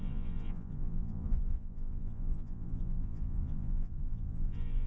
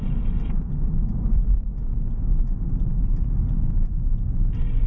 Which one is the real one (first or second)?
second